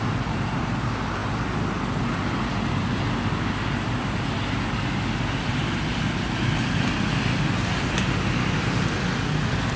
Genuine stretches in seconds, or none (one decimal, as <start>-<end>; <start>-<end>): 0.0-9.8